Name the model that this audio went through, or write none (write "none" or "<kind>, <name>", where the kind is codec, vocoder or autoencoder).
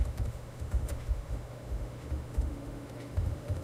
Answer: autoencoder, DAC-VAE